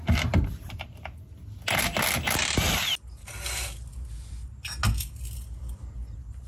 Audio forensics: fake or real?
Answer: real